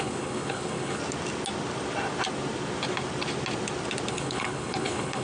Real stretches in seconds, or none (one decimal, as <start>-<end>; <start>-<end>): 1.0-4.1